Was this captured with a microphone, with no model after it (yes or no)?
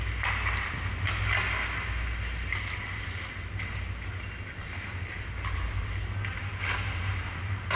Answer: yes